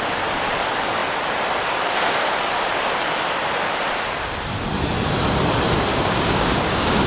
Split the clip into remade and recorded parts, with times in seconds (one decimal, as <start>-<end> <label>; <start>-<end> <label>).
0.0-5.9 recorded; 5.9-7.1 remade